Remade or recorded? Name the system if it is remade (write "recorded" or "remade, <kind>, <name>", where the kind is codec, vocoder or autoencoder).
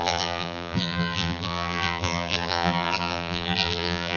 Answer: remade, vocoder, BigVGAN v2